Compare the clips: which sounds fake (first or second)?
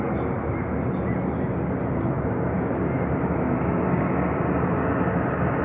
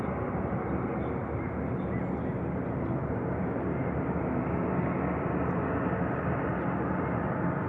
second